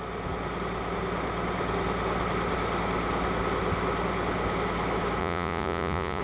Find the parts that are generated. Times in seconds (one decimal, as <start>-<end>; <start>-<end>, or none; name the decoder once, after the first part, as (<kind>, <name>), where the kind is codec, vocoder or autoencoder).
5.2-6.2 (vocoder, Vocos)